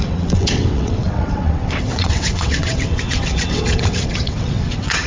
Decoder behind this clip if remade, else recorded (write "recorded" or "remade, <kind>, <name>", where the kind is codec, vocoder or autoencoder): remade, vocoder, WaveNeXt